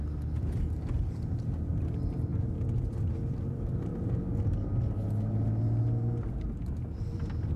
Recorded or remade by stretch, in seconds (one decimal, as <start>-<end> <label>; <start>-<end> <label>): 0.0-7.6 recorded